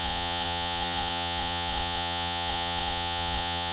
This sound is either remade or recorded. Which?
remade